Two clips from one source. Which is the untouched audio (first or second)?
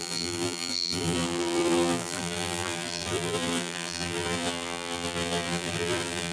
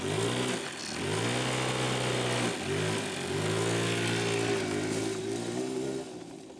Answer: second